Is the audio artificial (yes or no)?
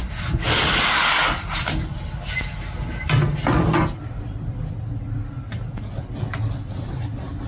no